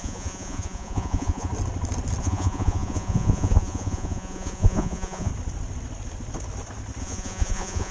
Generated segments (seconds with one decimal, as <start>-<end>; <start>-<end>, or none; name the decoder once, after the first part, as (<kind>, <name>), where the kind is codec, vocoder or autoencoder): 0.0-1.5 (vocoder, Vocos); 2.2-5.3; 7.0-7.9